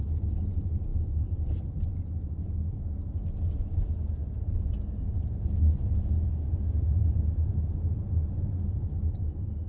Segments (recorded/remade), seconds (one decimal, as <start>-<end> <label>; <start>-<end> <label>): 0.0-9.7 recorded